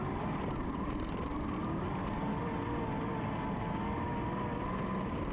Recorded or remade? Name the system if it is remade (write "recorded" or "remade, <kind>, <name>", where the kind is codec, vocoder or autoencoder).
recorded